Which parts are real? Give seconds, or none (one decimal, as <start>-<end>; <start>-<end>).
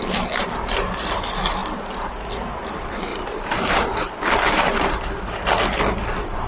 0.0-3.1; 5.1-6.5